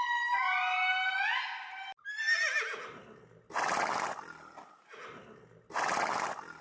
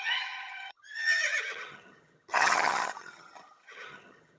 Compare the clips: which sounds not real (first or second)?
second